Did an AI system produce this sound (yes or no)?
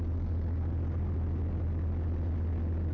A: no